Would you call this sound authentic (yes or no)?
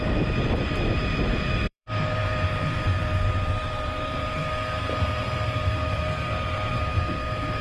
no